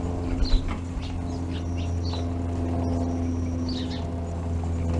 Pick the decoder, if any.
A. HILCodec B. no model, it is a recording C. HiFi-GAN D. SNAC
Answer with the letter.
B